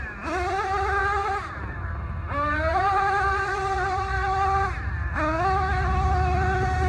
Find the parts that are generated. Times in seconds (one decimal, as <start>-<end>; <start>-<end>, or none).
1.0-5.1